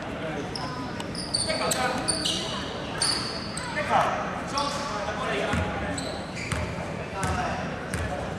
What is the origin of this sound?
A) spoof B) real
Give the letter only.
A